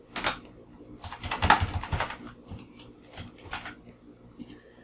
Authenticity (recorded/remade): recorded